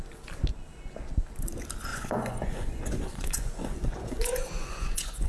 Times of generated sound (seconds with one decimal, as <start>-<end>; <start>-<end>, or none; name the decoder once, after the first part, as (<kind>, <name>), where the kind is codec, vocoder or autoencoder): 1.9-5.3 (vocoder, Vocos)